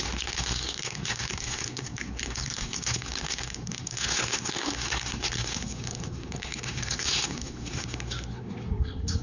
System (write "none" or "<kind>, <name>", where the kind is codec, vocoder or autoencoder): codec, SNAC